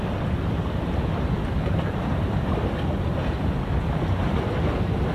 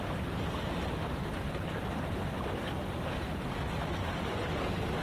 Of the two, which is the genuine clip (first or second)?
second